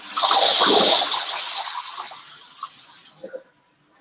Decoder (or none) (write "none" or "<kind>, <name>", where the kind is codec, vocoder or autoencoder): none